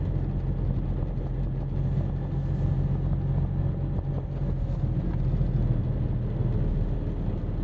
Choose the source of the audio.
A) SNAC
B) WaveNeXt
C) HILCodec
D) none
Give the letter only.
D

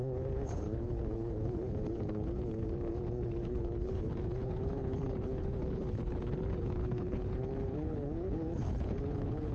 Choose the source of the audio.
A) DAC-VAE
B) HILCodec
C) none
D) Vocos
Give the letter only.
B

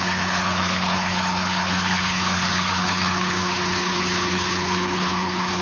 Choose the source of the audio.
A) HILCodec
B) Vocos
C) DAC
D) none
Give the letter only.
A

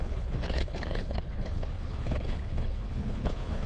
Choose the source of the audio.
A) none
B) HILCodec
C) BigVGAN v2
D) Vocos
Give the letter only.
B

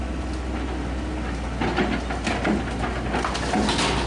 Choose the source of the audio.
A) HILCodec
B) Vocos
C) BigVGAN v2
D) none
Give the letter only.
D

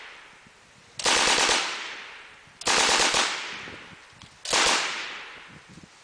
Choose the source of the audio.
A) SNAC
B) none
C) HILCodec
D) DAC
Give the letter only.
B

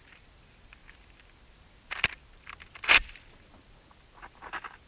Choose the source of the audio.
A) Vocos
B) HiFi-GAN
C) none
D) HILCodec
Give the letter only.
C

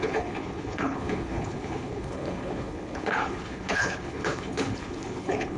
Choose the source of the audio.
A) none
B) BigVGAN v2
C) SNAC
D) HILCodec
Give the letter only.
D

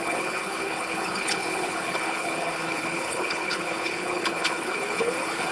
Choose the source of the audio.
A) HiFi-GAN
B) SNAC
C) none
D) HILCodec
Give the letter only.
D